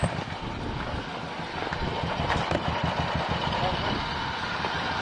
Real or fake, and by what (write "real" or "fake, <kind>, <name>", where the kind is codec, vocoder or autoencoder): real